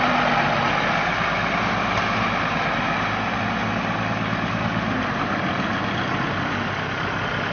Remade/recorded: recorded